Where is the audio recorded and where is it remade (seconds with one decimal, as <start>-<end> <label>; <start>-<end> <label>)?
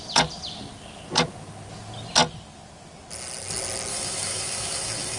0.0-3.9 recorded; 3.9-5.2 remade